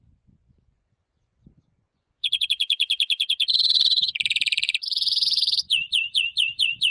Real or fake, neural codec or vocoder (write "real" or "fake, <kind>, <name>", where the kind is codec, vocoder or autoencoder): fake, vocoder, Vocos